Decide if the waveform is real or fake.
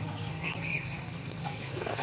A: fake